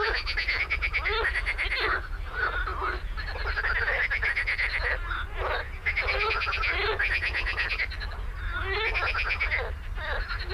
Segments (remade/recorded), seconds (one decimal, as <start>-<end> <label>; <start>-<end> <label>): 0.0-10.5 recorded